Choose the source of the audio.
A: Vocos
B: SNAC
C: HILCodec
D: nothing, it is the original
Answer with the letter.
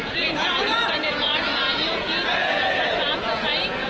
A